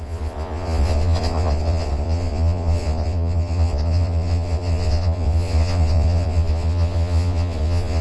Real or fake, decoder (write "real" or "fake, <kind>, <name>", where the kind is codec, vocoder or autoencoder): fake, vocoder, Vocos